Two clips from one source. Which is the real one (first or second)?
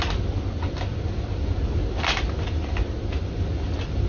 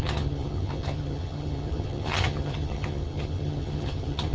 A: first